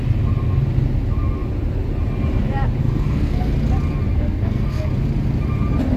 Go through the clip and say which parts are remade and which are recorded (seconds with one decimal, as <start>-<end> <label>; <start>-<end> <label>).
0.0-2.8 recorded; 2.8-3.5 remade; 3.5-4.1 recorded; 4.1-4.9 remade; 4.9-6.0 recorded